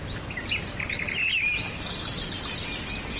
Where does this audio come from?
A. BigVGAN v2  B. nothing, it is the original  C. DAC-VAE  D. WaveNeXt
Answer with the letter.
B